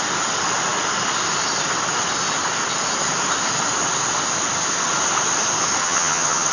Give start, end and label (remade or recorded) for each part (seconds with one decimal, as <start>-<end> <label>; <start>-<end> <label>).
0.0-5.8 recorded; 5.8-6.5 remade